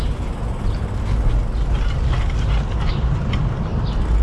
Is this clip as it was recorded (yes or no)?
yes